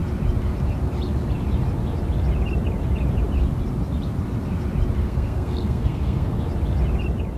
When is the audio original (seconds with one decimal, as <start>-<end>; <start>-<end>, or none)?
0.0-5.0; 6.4-7.4